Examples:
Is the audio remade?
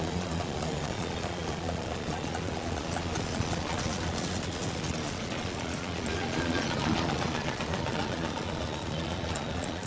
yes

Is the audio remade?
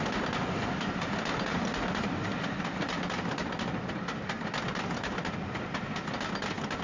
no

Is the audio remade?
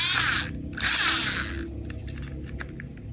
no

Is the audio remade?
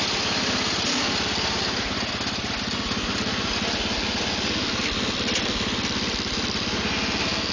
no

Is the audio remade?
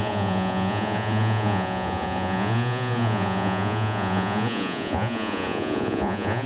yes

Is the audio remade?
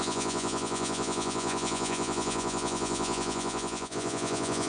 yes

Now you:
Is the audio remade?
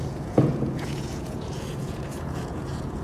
yes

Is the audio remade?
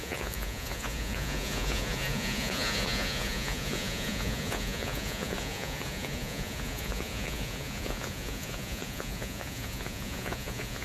yes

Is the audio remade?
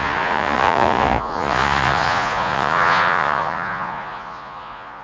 yes